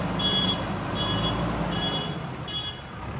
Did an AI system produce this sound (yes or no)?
no